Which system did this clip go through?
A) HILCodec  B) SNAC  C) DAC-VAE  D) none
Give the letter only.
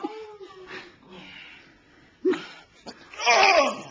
D